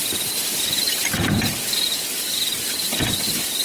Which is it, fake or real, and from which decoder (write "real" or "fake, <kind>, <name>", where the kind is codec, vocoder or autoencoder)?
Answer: real